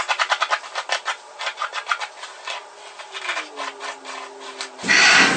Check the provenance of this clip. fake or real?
real